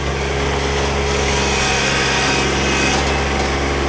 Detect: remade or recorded recorded